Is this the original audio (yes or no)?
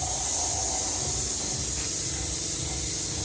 yes